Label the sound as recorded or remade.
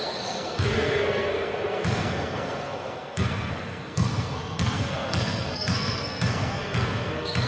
remade